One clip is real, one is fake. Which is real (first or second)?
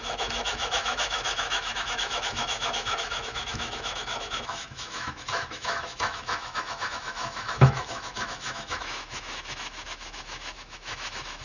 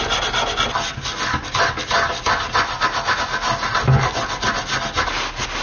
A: second